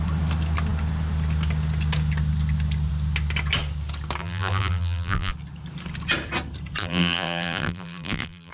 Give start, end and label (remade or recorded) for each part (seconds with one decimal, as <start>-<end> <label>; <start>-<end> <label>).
0.0-4.2 recorded; 4.2-5.3 remade; 5.3-6.8 recorded; 6.8-8.5 remade